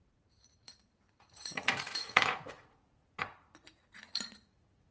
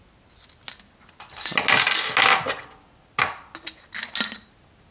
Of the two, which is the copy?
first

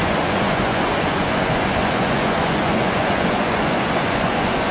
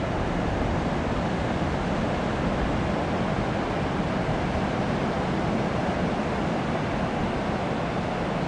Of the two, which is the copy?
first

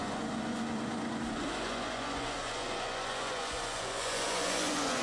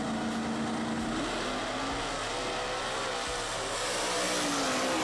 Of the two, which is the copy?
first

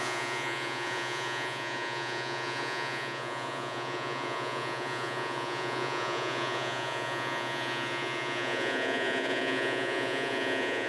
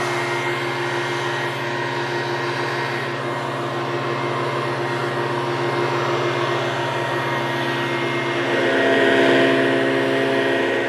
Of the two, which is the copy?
first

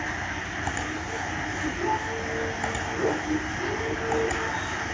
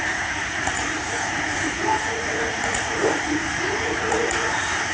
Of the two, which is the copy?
second